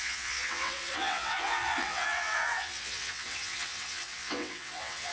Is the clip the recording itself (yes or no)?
no